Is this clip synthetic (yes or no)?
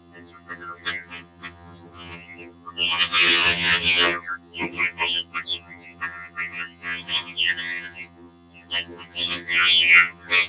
yes